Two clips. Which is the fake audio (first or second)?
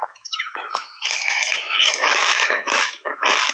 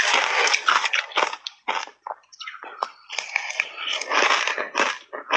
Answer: first